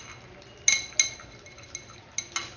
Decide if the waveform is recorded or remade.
recorded